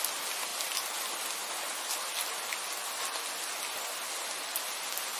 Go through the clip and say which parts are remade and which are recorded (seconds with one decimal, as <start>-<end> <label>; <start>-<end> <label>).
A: 0.0-5.2 recorded